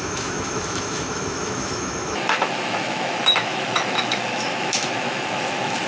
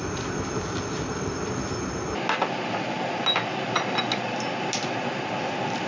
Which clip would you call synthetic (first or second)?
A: first